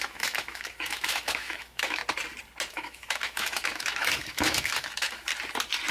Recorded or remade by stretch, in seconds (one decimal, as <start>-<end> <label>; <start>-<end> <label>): 0.0-2.0 remade; 2.0-2.7 recorded; 2.7-5.3 remade; 5.3-5.9 recorded